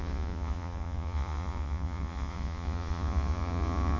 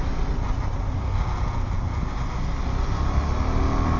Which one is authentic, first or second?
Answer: second